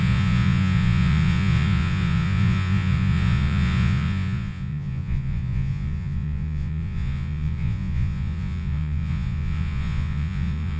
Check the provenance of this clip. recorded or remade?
remade